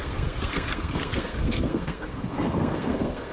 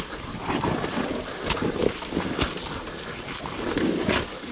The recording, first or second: second